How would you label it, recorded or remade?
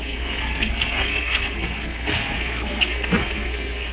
remade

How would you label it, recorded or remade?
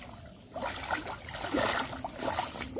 recorded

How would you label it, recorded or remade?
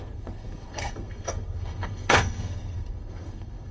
remade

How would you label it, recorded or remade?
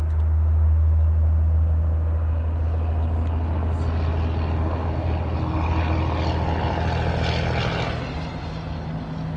recorded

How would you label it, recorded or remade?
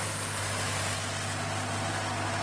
recorded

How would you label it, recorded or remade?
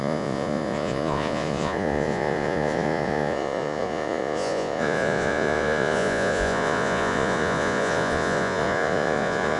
remade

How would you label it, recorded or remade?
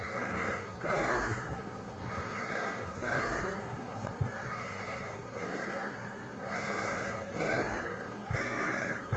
remade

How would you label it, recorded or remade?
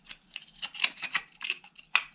recorded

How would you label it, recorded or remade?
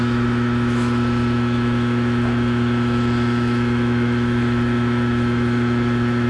remade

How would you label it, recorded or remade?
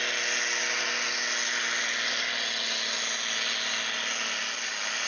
recorded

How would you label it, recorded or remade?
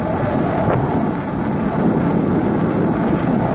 recorded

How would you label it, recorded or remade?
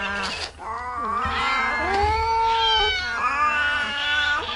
recorded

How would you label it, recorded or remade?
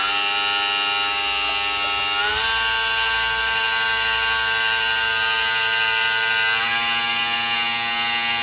recorded